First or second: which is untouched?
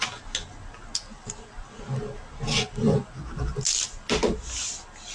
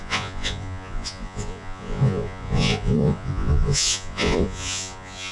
first